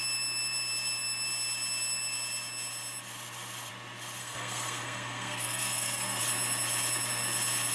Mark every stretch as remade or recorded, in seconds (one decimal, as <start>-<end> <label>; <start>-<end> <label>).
0.0-4.2 recorded; 4.2-6.2 remade; 6.2-7.7 recorded